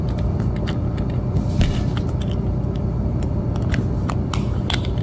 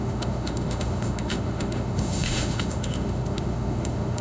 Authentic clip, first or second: first